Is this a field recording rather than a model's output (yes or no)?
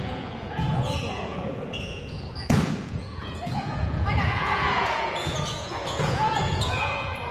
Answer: no